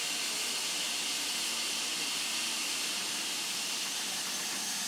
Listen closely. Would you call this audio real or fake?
real